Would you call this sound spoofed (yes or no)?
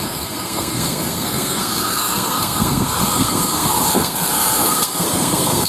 yes